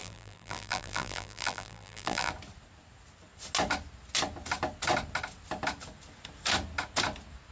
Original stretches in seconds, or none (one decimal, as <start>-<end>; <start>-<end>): 2.3-7.5